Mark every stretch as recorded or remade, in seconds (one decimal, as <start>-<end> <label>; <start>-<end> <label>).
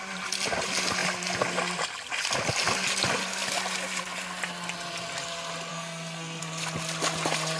0.0-5.7 recorded; 5.7-6.4 remade; 6.4-7.6 recorded